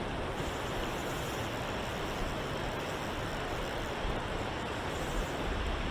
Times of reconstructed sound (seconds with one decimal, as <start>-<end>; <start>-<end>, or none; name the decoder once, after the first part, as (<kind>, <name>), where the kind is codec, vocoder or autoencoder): none